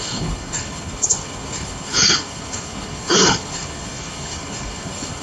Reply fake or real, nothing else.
fake